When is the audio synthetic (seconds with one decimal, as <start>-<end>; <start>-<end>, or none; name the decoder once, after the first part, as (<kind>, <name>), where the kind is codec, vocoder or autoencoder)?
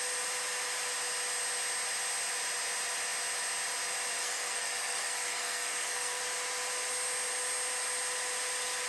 4.2-6.2 (codec, SNAC)